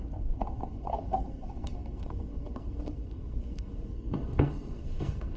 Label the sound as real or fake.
fake